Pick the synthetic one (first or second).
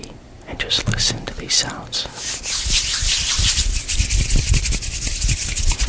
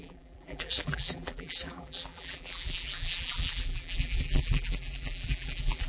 second